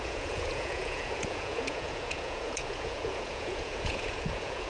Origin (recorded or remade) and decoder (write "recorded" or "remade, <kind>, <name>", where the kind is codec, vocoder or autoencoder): remade, vocoder, Vocos